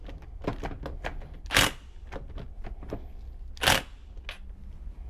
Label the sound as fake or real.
real